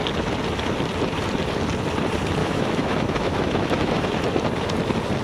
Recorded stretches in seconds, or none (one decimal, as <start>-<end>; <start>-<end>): 0.0-2.4; 4.1-5.2